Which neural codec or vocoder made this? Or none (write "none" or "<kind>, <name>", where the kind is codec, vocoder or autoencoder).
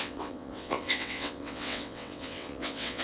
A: vocoder, WaveNeXt